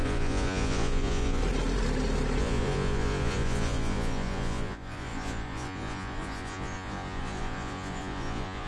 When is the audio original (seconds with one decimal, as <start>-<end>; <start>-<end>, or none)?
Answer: 1.4-2.4